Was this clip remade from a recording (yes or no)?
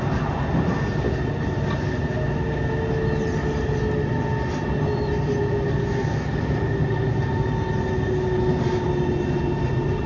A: no